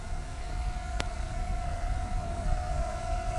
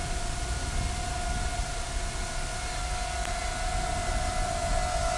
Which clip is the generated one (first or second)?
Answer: first